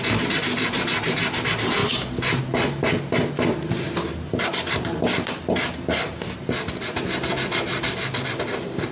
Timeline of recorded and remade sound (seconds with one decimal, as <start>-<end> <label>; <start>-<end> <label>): 0.0-8.9 recorded